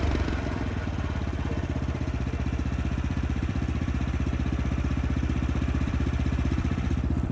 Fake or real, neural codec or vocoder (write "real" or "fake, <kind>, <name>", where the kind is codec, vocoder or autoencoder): fake, vocoder, BigVGAN v2